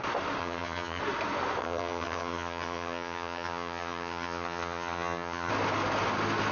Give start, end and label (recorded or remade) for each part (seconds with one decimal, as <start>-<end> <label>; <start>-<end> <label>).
0.0-0.4 recorded; 0.4-1.0 remade; 1.0-1.6 recorded; 1.6-5.5 remade; 5.5-6.5 recorded